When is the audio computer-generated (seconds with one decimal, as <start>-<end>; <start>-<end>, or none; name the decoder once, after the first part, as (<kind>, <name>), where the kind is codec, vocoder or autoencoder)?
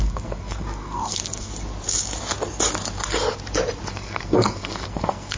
0.0-1.5 (codec, SNAC); 3.9-5.4